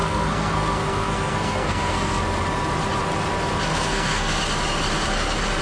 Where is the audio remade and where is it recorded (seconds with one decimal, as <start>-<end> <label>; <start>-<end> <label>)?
0.0-2.2 remade; 2.2-3.7 recorded; 3.7-4.4 remade; 4.4-5.6 recorded